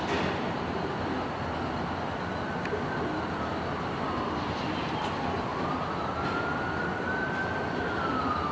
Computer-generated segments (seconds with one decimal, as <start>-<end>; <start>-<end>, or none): none